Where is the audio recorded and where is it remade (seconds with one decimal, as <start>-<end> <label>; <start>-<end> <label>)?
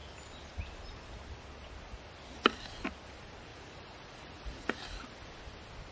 0.0-3.5 recorded; 3.5-4.8 remade; 4.8-5.9 recorded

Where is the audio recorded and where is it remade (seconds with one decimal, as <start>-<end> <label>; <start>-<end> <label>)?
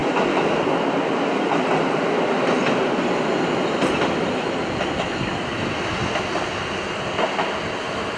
0.0-8.2 recorded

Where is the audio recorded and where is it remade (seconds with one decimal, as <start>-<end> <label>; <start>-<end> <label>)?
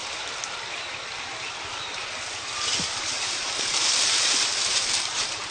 0.0-5.5 remade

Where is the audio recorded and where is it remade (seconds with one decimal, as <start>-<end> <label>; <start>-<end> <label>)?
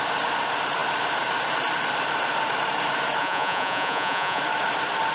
0.0-3.2 recorded; 3.2-4.4 remade; 4.4-5.1 recorded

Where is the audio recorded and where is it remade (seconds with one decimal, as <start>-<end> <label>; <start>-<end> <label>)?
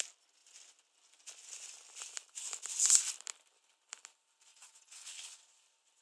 0.0-4.5 recorded; 4.5-5.4 remade; 5.4-6.0 recorded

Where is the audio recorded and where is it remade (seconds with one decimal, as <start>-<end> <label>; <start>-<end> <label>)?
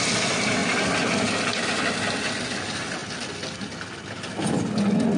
0.0-5.2 recorded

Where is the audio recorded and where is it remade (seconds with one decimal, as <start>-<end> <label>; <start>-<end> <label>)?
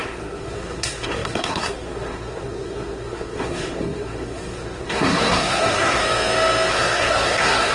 0.0-6.0 remade; 6.0-6.7 recorded; 6.7-7.7 remade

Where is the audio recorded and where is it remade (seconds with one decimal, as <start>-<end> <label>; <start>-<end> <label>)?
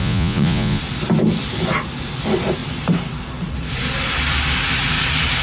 0.0-0.8 remade; 0.8-5.4 recorded